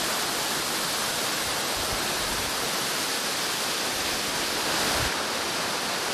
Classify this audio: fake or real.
real